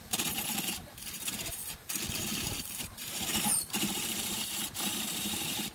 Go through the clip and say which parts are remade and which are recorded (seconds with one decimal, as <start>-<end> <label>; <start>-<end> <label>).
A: 0.0-1.6 remade; 1.6-2.2 recorded; 2.2-5.7 remade

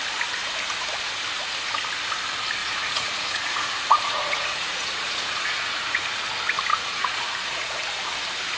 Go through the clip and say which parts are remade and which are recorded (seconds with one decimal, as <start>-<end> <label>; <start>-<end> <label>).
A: 0.0-2.6 recorded; 2.6-6.3 remade; 6.3-6.7 recorded; 6.7-7.8 remade; 7.8-8.6 recorded

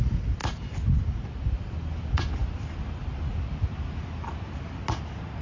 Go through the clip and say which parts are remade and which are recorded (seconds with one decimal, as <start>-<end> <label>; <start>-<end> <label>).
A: 0.0-5.4 recorded

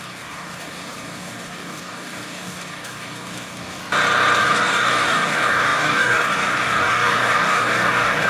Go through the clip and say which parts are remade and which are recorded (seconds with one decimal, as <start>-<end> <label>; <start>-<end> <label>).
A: 0.0-3.8 remade; 3.8-4.4 recorded; 4.4-8.3 remade

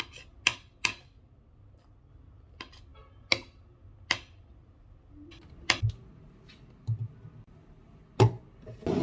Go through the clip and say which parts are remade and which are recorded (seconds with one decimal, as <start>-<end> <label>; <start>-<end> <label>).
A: 0.0-9.0 recorded

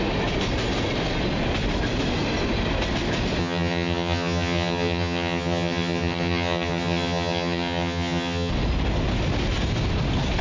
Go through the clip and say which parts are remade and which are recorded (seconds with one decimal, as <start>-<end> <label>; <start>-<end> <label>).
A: 0.0-3.4 recorded; 3.4-8.5 remade; 8.5-10.4 recorded

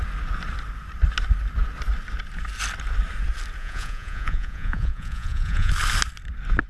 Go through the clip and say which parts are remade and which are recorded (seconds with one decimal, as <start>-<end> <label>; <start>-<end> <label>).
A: 0.0-3.6 recorded; 3.6-5.7 remade; 5.7-6.7 recorded